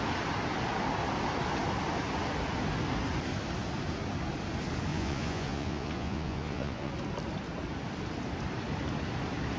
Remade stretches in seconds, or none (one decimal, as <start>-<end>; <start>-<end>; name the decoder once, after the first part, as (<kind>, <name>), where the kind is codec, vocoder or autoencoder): 4.9-6.9 (vocoder, Vocos)